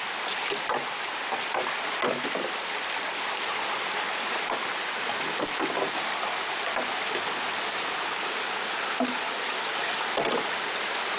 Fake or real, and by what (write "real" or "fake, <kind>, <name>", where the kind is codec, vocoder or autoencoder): real